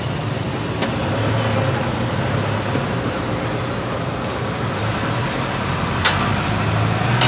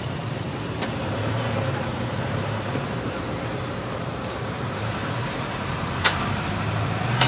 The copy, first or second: second